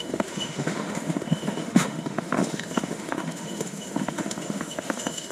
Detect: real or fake fake